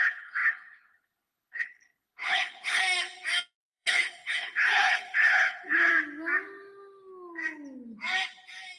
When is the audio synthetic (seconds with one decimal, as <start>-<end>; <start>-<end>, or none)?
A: 0.0-2.8; 3.6-5.9